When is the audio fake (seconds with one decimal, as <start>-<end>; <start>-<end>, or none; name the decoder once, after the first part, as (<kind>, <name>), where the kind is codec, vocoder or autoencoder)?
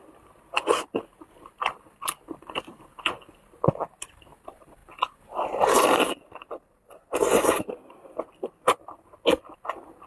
none